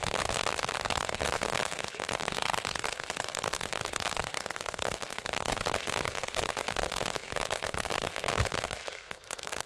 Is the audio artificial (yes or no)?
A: yes